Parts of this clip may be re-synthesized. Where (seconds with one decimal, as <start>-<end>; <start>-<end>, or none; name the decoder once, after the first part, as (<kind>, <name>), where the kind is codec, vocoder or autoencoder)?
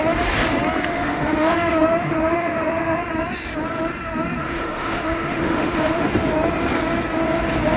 0.9-3.0 (autoencoder, DAC-VAE); 4.4-6.1